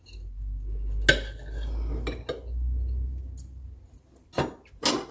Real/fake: real